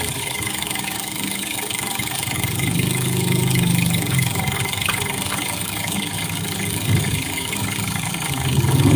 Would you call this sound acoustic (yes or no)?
no